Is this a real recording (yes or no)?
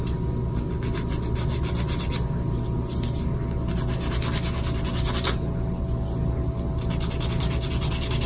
yes